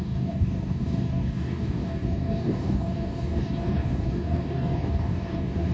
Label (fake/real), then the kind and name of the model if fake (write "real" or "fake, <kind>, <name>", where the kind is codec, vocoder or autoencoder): fake, codec, DAC